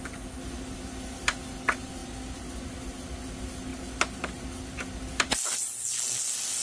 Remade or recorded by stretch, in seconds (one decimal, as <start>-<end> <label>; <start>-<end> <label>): 0.0-6.6 recorded